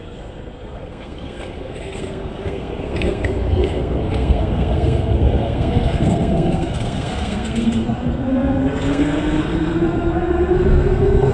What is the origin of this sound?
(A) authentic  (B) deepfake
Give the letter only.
B